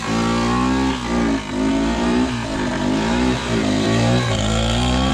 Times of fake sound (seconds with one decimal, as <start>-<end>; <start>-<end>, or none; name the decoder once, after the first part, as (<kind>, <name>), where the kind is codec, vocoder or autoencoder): 1.7-5.1 (vocoder, BigVGAN v2)